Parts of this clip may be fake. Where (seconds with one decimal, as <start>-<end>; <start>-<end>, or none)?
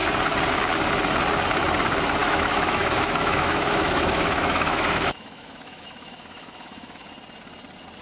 2.2-7.0